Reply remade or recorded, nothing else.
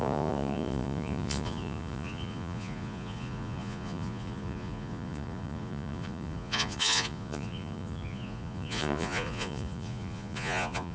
remade